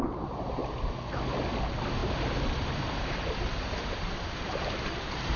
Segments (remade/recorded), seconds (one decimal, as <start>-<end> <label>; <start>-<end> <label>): 0.0-0.6 remade; 0.6-1.5 recorded; 1.5-5.4 remade